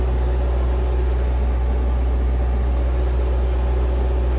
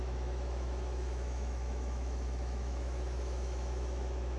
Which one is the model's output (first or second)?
second